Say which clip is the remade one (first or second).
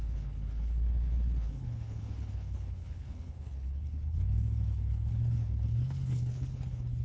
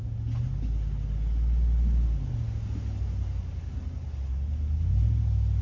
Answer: first